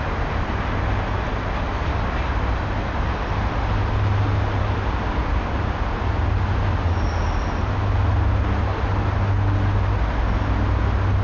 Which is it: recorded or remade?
recorded